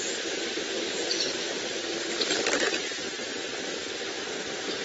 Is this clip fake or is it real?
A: real